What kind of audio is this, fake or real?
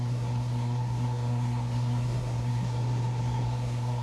fake